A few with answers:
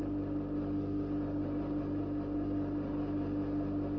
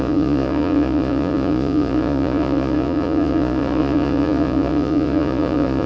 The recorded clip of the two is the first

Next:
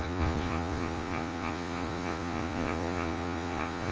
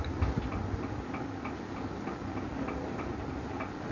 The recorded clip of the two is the second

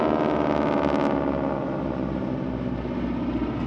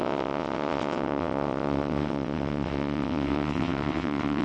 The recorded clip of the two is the first